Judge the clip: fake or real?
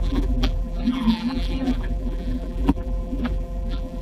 fake